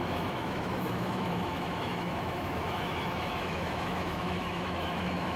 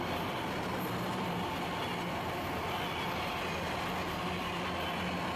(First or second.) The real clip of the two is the second